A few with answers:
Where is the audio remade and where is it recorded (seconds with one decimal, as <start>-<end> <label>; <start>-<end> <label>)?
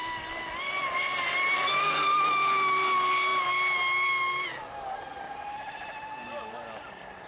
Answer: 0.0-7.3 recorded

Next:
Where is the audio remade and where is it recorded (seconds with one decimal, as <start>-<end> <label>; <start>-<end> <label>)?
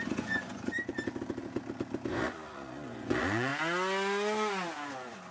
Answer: 0.0-0.9 remade; 0.9-2.1 recorded; 2.1-3.5 remade; 3.5-5.3 recorded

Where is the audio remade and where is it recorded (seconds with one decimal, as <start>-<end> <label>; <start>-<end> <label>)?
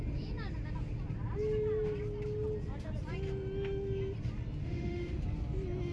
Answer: 0.0-4.6 recorded; 4.6-5.2 remade; 5.2-5.9 recorded